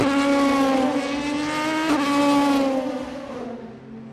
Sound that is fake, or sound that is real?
real